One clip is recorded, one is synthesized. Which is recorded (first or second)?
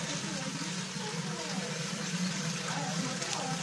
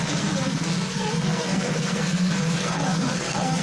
first